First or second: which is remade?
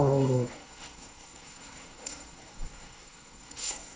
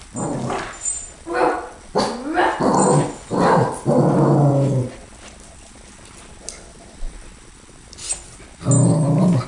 first